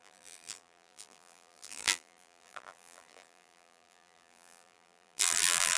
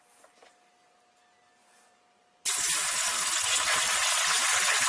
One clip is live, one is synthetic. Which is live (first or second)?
second